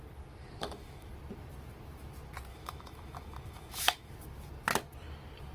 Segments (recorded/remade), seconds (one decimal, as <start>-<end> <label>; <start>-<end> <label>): 0.0-0.6 recorded; 0.6-1.1 remade; 1.1-2.5 recorded; 2.5-4.1 remade; 4.1-5.5 recorded